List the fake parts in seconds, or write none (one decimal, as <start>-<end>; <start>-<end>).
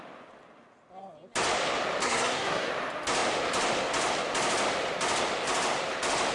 2.0-2.7